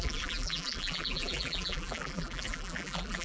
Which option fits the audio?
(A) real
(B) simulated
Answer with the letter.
B